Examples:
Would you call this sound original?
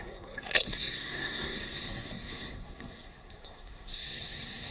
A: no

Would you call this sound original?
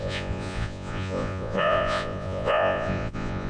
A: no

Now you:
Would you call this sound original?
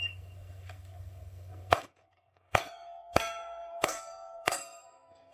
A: no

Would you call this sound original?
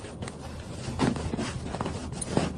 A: yes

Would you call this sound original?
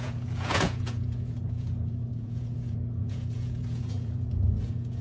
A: no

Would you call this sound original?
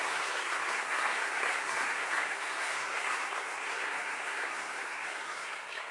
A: no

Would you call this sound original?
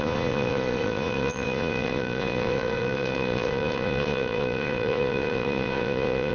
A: no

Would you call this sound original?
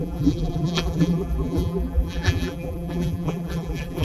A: no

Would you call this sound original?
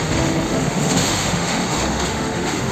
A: no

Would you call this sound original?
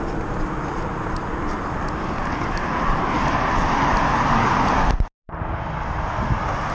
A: yes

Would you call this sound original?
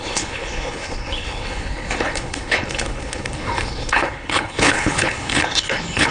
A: no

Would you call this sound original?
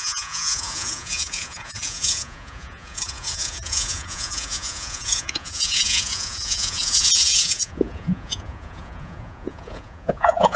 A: no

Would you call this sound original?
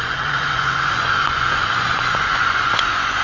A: no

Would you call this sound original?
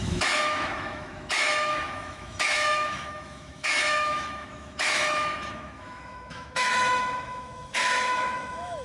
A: no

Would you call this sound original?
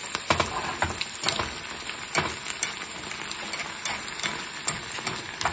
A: yes